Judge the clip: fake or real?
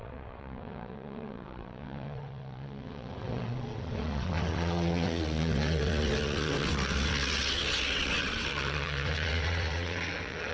fake